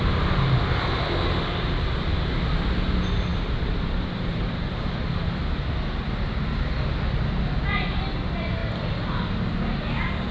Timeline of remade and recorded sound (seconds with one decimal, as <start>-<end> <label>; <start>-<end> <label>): 0.0-3.3 recorded; 3.3-5.7 remade; 5.7-10.3 recorded